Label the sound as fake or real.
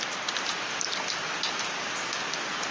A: real